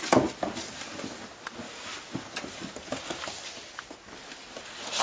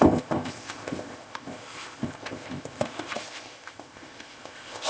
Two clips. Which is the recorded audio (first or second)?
first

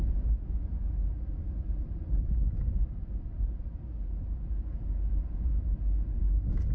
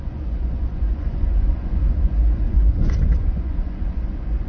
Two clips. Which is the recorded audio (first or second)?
first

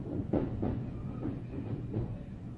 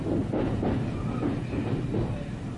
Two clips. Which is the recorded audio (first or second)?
second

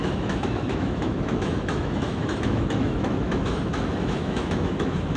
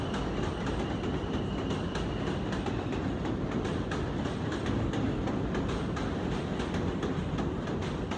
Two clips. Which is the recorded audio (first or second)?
second